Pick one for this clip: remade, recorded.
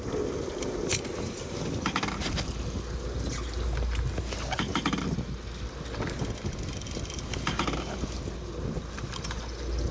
recorded